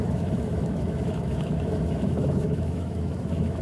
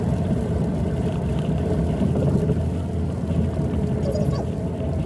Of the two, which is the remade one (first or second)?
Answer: first